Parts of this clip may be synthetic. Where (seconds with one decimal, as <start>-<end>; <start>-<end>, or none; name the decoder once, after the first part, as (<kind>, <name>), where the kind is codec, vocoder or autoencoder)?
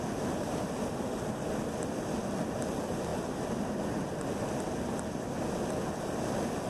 none